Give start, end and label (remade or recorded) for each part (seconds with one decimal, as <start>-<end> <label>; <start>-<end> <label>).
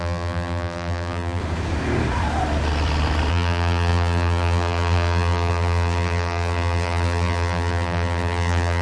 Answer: 0.0-1.4 remade; 1.4-3.3 recorded; 3.3-8.8 remade